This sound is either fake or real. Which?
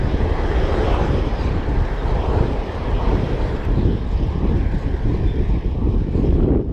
real